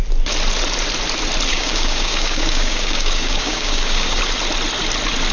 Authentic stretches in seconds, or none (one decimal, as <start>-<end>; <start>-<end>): 0.0-1.5; 4.2-5.3